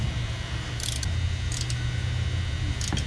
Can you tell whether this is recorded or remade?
recorded